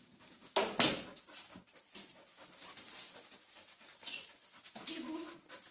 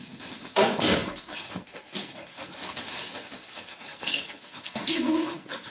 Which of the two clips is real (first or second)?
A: first